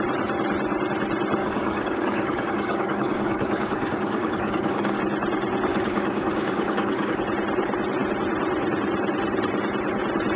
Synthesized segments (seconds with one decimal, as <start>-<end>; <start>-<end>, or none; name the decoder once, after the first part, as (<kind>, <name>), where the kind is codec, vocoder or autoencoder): 1.4-5.0 (codec, DAC); 5.7-7.2